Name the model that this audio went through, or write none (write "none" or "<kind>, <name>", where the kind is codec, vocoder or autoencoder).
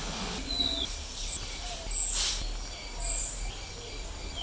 none